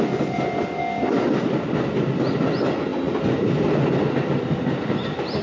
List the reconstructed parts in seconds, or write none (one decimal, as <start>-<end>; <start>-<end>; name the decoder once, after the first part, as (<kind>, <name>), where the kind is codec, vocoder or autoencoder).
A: none